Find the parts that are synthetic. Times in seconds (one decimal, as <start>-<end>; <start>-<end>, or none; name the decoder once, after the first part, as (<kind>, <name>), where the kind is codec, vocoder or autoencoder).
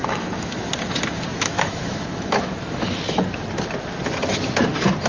0.0-0.7 (autoencoder, DAC-VAE); 1.3-3.0